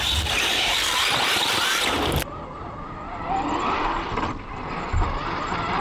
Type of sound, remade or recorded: recorded